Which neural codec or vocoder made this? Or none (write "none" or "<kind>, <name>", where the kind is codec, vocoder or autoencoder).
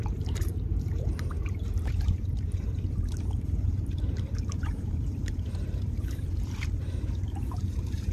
vocoder, BigVGAN v2